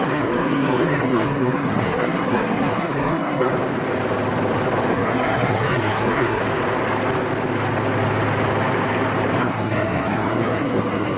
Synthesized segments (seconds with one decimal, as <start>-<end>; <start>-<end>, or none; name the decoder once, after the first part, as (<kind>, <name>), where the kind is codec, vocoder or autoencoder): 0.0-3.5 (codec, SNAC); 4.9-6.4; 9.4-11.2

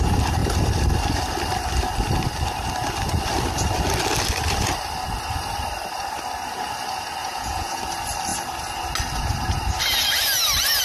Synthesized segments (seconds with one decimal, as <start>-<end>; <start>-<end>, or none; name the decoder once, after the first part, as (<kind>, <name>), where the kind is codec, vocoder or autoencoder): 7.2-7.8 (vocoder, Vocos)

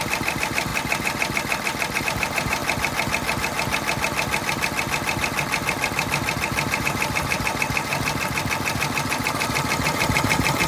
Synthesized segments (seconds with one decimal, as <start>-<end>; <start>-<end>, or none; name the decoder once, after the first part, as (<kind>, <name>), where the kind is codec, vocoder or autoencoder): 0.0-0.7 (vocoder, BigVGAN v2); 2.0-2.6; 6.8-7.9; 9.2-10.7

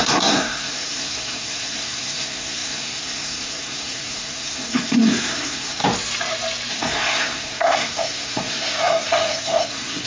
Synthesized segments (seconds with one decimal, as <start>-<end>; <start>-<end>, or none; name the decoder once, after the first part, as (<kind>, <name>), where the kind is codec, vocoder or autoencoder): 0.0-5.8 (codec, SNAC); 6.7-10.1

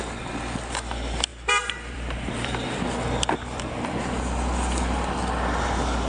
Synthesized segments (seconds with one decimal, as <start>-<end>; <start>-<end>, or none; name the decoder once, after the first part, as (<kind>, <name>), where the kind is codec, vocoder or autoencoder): 1.3-4.0 (vocoder, BigVGAN v2)